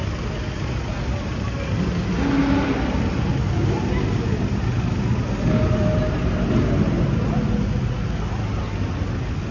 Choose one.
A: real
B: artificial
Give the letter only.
A